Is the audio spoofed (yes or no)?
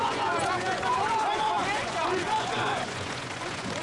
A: yes